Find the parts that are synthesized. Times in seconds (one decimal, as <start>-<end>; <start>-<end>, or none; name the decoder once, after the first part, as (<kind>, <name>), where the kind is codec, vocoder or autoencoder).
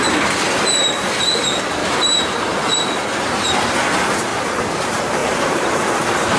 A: 1.8-2.6 (vocoder, BigVGAN v2); 5.2-6.0